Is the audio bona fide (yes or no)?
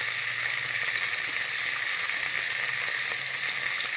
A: yes